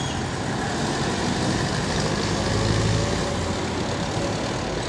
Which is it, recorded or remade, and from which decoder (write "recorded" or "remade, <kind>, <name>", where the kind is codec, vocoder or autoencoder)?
recorded